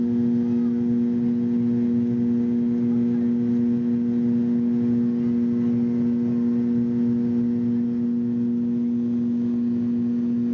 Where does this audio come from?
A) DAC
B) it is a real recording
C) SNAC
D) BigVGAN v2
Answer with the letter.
B